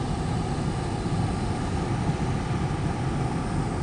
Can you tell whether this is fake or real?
real